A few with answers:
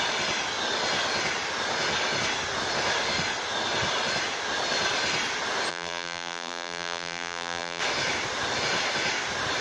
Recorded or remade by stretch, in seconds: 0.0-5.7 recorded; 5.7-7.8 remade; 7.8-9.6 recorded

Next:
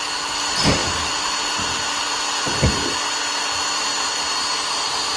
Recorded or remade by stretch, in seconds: 0.0-0.8 recorded; 0.8-2.0 remade; 2.0-5.2 recorded

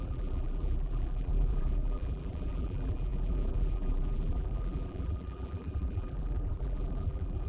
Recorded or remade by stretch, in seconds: 0.0-7.5 remade